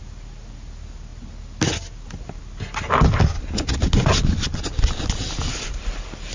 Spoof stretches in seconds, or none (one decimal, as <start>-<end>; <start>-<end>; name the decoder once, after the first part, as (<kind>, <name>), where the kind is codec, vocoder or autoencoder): none